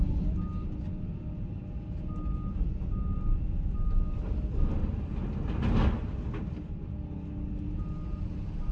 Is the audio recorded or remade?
recorded